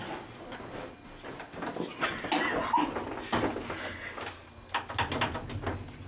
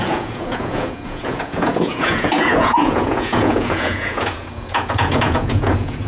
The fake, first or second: second